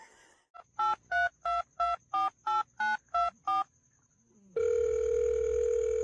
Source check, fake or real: real